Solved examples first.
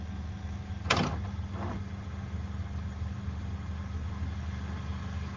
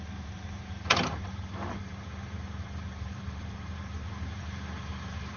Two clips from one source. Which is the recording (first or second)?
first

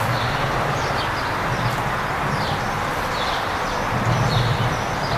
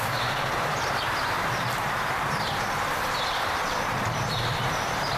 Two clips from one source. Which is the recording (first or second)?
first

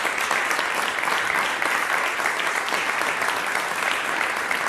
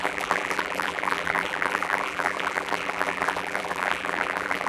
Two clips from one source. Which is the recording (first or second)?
first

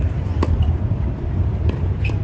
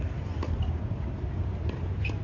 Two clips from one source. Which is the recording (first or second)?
second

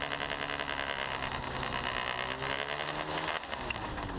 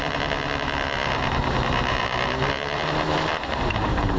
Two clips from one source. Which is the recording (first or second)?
first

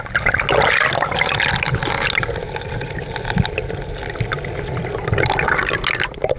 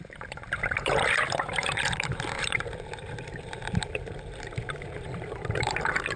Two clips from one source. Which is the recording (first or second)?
first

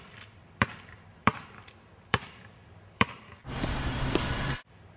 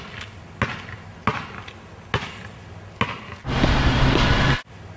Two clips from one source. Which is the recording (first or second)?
second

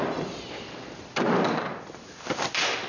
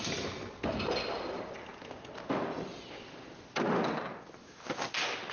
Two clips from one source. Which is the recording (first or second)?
second